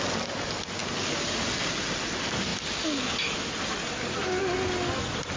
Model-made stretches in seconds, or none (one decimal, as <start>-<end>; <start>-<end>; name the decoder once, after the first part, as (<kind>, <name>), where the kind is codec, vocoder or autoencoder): none